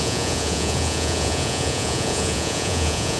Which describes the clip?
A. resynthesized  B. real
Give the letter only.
A